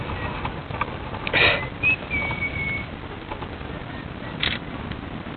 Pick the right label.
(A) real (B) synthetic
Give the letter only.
A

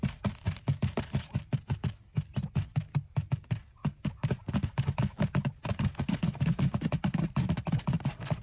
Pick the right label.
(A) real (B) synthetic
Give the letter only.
A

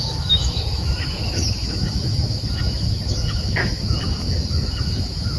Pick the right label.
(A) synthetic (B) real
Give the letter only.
A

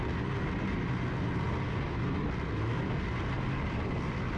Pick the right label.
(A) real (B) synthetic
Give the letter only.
A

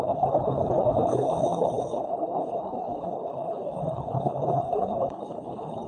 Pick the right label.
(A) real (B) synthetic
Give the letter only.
B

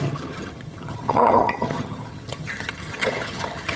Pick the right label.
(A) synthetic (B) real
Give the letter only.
A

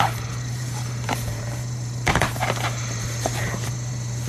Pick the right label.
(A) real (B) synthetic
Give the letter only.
B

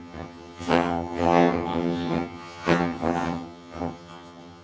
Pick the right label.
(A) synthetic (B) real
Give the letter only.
A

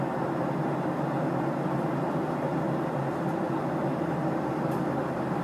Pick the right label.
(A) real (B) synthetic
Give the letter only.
A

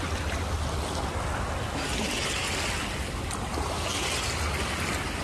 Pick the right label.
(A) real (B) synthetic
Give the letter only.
A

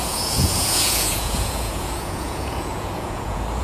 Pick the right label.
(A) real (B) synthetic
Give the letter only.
B